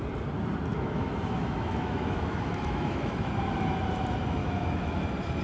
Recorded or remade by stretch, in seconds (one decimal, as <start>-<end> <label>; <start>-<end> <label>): 0.0-0.7 recorded; 0.7-3.3 remade; 3.3-4.4 recorded; 4.4-5.0 remade; 5.0-5.4 recorded